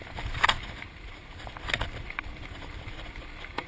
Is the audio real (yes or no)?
yes